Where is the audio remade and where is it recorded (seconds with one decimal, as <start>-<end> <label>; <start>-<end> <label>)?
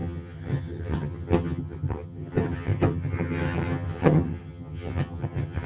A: 0.0-5.7 remade